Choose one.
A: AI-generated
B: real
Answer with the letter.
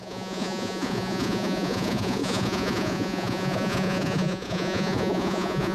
A